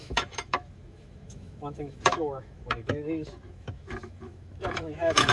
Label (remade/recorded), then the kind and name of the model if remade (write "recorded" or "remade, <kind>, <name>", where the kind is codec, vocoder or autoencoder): remade, autoencoder, DAC-VAE